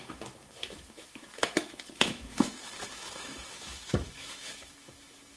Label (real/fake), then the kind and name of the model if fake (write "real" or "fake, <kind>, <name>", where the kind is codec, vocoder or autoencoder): fake, autoencoder, DAC-VAE